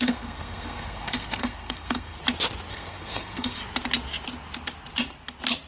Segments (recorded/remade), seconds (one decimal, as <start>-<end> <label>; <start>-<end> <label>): 0.0-2.2 remade; 2.2-2.7 recorded; 2.7-3.6 remade; 3.6-5.7 recorded

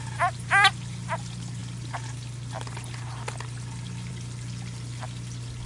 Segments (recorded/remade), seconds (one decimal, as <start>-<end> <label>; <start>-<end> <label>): 0.0-5.7 recorded

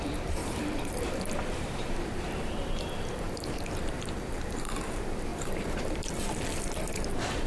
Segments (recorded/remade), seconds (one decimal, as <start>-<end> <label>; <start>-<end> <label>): 0.0-7.5 remade

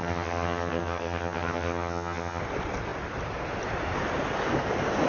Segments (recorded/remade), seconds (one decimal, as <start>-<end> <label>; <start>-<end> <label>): 0.0-2.4 remade; 2.4-5.1 recorded

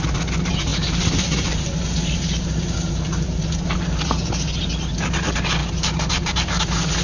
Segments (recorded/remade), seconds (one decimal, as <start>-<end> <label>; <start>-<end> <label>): 0.0-0.7 recorded; 0.7-4.0 remade; 4.0-5.6 recorded; 5.6-6.6 remade; 6.6-7.0 recorded

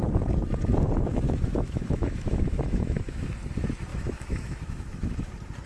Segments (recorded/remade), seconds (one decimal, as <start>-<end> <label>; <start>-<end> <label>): 0.0-1.1 recorded; 1.1-3.3 remade; 3.3-3.9 recorded; 3.9-5.3 remade; 5.3-5.7 recorded

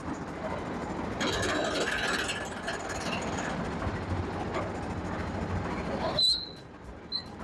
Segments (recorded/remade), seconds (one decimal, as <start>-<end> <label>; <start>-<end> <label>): 0.0-7.4 recorded

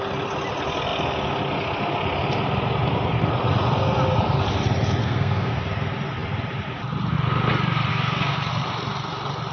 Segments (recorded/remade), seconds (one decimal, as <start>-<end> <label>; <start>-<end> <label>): 0.0-5.0 recorded; 5.0-5.6 remade; 5.6-7.9 recorded; 7.9-8.5 remade; 8.5-9.5 recorded